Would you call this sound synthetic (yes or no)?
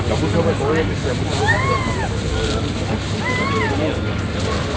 no